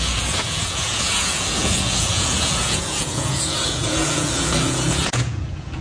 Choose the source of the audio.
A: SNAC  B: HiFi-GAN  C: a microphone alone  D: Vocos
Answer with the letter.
D